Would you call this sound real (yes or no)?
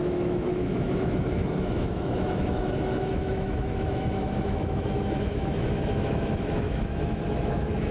no